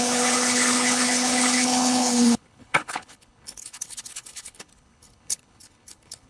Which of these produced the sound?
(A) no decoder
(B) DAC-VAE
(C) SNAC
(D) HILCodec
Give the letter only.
D